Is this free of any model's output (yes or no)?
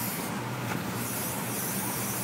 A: no